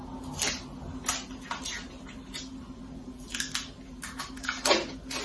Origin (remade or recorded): recorded